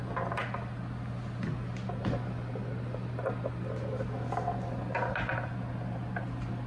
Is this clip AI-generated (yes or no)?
no